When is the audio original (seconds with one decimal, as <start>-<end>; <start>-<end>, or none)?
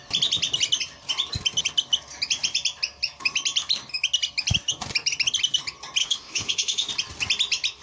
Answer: 0.0-6.0; 6.9-7.8